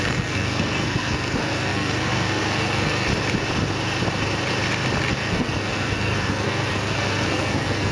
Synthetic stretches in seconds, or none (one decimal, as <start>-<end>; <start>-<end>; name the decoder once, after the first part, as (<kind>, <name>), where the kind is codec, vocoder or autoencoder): 0.0-3.1 (codec, SNAC); 5.1-7.9